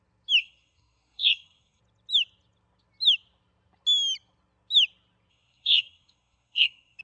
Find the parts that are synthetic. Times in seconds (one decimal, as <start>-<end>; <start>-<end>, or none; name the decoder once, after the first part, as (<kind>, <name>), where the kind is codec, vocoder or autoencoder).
0.4-1.8 (codec, SNAC); 5.3-7.0